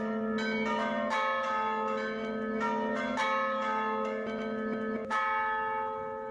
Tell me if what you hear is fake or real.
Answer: real